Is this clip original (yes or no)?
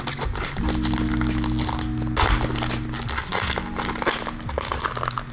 yes